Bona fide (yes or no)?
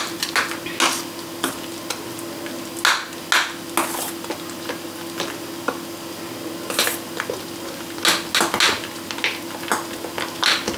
yes